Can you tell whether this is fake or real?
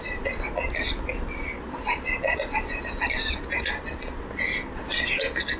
real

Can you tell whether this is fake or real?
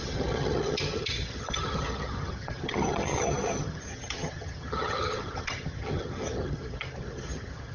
fake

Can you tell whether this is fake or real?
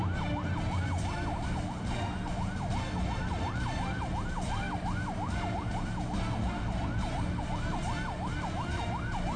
real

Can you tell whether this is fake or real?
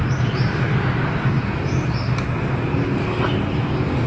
real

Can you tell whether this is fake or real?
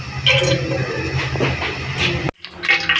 real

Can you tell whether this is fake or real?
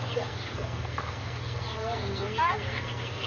fake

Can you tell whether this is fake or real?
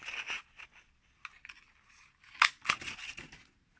real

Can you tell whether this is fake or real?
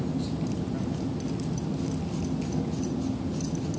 real